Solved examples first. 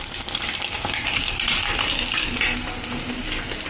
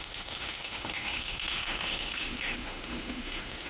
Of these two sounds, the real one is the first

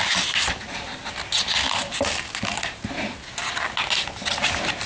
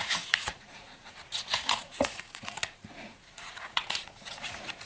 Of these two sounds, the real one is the first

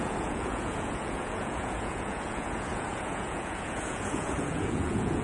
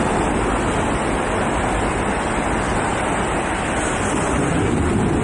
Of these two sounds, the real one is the second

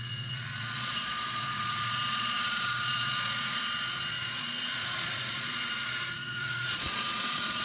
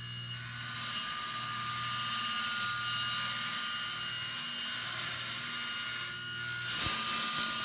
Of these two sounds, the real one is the second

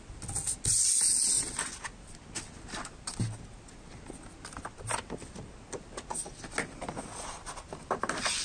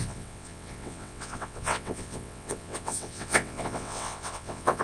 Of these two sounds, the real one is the first